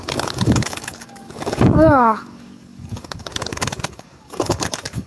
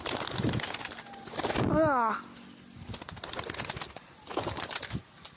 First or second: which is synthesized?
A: first